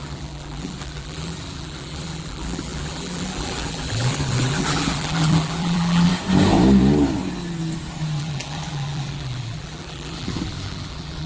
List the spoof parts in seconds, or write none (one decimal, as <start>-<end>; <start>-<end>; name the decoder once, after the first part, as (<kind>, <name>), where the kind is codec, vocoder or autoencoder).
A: 0.0-6.1 (vocoder, BigVGAN v2); 8.2-11.3